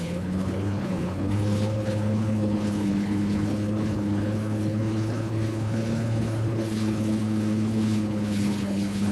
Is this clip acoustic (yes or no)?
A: no